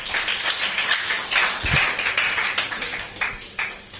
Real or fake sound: real